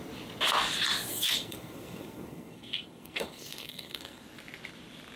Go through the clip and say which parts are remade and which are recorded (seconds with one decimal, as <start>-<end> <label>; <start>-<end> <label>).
0.0-1.1 recorded; 1.1-4.2 remade; 4.2-5.2 recorded